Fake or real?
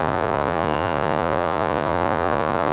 fake